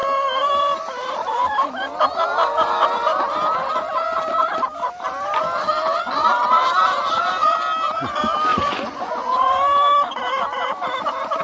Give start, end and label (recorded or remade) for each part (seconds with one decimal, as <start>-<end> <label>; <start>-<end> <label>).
0.0-8.5 recorded; 8.5-9.6 remade; 9.6-11.4 recorded

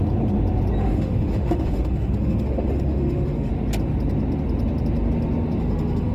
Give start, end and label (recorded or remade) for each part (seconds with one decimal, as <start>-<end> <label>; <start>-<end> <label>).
0.0-0.8 recorded; 0.8-3.5 remade; 3.5-5.6 recorded; 5.6-6.1 remade

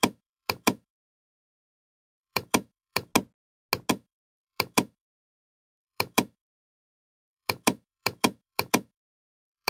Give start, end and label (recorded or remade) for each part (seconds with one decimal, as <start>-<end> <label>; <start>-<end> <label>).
0.0-3.1 remade; 3.1-3.9 recorded; 3.9-9.7 remade